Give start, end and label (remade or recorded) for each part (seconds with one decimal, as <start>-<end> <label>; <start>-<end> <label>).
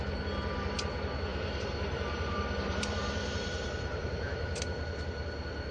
0.0-1.3 recorded; 1.3-4.6 remade; 4.6-5.7 recorded